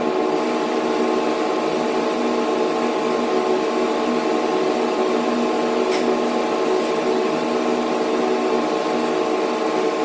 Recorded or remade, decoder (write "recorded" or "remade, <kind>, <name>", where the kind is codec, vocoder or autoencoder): recorded